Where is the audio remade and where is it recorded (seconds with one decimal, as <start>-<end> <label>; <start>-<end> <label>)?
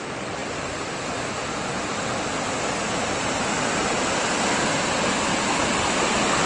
0.0-3.8 recorded; 3.8-5.6 remade; 5.6-6.5 recorded